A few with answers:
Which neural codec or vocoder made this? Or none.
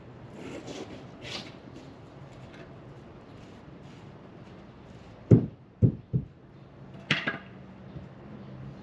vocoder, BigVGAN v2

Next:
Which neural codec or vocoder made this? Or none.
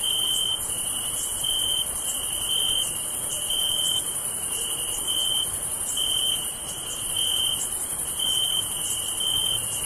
vocoder, BigVGAN v2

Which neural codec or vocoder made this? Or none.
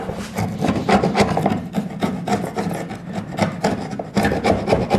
none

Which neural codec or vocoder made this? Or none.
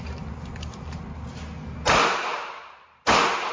none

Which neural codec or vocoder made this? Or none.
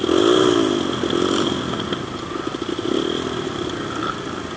none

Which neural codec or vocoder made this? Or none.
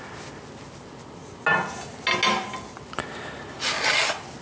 none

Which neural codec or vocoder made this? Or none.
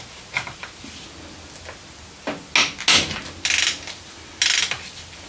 none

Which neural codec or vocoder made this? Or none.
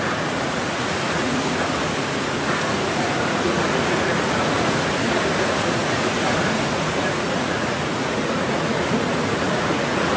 vocoder, Vocos